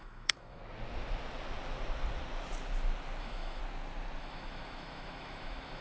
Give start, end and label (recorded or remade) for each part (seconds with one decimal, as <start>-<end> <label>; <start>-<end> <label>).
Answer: 0.0-0.6 remade; 0.6-3.2 recorded; 3.2-3.6 remade; 3.6-4.2 recorded; 4.2-5.8 remade